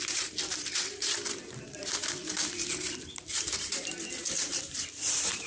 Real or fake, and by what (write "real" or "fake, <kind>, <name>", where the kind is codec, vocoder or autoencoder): fake, vocoder, BigVGAN v2